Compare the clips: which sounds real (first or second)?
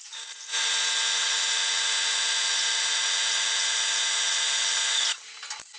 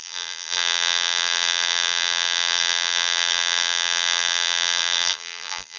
first